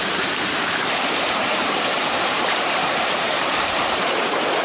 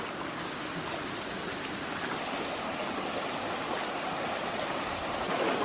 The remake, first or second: first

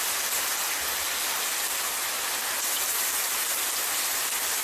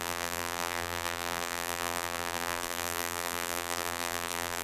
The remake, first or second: second